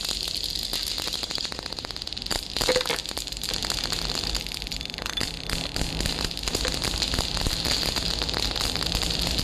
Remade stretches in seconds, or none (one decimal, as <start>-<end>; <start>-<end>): none